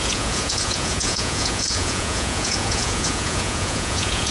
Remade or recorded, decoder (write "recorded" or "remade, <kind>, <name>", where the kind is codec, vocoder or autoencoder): remade, vocoder, Vocos